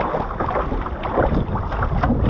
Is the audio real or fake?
real